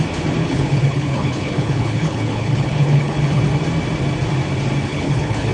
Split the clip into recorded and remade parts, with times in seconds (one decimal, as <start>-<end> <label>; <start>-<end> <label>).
0.0-0.4 recorded; 0.4-3.4 remade; 3.4-4.9 recorded; 4.9-5.5 remade